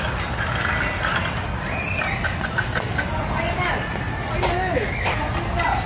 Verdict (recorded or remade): recorded